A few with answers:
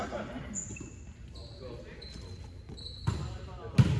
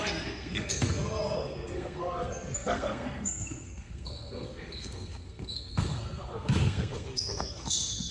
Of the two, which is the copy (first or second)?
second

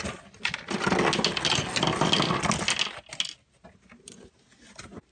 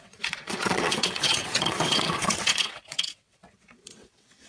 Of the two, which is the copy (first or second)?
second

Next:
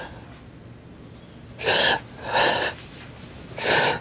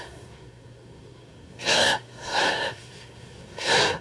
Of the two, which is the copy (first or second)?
second